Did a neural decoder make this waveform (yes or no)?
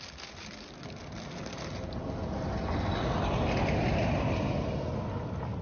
no